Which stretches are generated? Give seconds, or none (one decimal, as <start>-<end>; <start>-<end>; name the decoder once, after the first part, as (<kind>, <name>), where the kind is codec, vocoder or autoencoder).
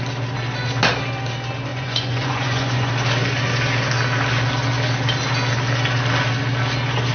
1.7-2.9 (vocoder, Vocos)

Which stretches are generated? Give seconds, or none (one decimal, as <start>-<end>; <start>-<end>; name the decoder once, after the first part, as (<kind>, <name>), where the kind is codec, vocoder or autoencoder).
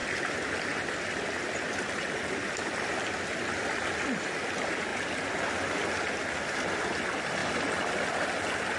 none